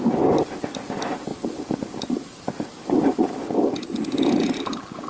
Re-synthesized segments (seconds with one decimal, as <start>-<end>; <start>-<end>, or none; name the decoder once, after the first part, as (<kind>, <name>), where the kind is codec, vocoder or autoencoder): none